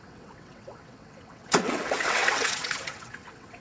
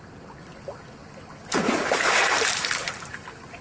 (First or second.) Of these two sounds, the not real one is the first